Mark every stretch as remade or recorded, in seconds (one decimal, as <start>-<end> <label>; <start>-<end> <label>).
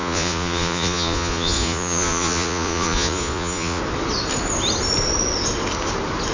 0.0-3.8 remade; 3.8-6.3 recorded